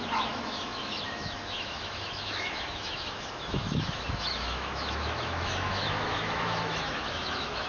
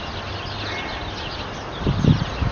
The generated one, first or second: first